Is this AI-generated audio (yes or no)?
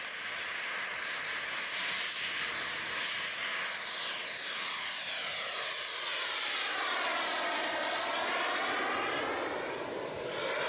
no